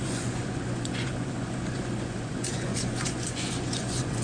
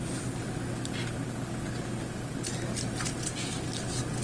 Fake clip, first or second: first